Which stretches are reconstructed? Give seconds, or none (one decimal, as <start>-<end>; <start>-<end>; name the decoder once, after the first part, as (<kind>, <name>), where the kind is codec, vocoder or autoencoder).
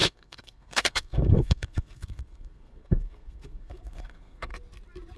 0.0-4.5 (codec, SNAC)